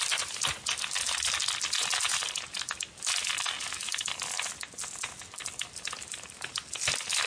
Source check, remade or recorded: recorded